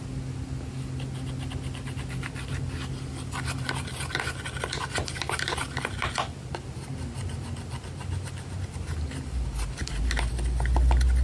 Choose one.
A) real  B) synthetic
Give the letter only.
A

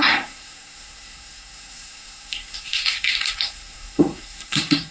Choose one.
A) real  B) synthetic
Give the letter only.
B